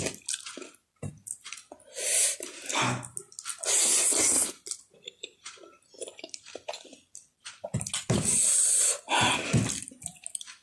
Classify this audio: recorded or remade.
recorded